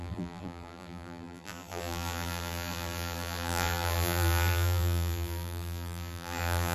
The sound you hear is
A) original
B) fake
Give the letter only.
B